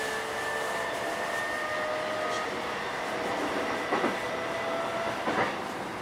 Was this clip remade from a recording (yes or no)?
no